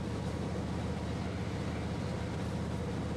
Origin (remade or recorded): recorded